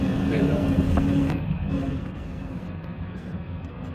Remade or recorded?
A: remade